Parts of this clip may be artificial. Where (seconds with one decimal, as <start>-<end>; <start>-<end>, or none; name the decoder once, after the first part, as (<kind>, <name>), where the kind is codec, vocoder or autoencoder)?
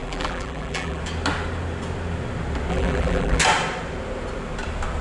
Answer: 0.0-1.0 (vocoder, BigVGAN v2); 2.7-3.4